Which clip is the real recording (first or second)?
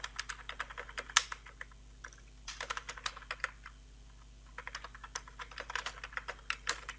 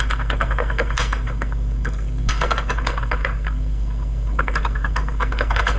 first